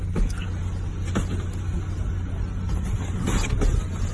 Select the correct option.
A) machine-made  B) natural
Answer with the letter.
B